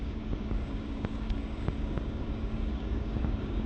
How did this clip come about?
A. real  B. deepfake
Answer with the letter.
B